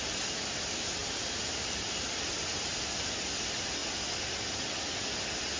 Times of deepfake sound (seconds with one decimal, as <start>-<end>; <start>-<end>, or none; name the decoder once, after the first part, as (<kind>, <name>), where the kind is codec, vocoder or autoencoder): 1.0-2.2 (vocoder, BigVGAN v2)

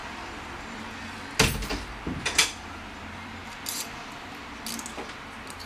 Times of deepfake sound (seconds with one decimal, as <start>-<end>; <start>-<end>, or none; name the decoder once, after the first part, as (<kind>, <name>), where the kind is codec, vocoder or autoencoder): 0.0-0.8 (vocoder, BigVGAN v2); 2.4-4.6

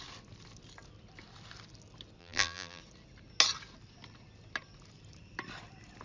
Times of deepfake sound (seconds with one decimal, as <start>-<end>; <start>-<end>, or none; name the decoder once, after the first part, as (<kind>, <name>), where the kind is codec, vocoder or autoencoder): 2.2-2.8 (vocoder, BigVGAN v2)

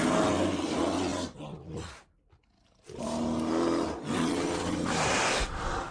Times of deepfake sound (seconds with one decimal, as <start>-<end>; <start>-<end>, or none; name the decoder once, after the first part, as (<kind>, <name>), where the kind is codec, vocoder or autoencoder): none